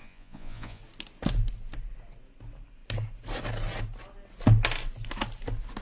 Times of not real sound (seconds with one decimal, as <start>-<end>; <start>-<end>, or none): 0.0-0.8